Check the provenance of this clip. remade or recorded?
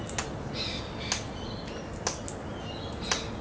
recorded